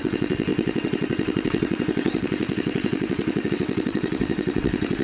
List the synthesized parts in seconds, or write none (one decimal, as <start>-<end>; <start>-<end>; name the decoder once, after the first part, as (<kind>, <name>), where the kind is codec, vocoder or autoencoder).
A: 0.0-5.0 (vocoder, WaveNeXt)